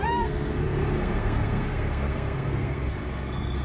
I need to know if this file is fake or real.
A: fake